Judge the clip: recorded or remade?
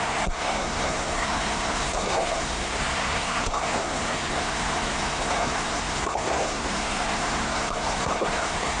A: remade